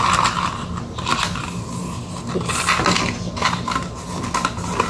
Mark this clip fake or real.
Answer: real